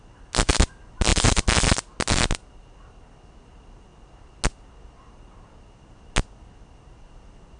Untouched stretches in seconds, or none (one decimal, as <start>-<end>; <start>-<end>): 0.0-7.6